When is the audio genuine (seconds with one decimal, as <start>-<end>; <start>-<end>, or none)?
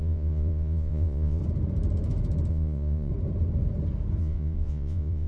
1.4-2.5; 3.1-4.2